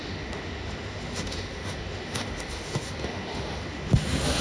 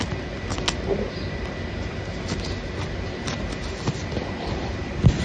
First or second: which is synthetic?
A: first